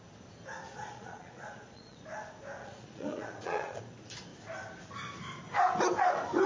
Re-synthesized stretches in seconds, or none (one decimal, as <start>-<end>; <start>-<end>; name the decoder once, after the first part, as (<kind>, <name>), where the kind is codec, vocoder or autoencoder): 0.7-2.0 (vocoder, Vocos); 2.6-3.8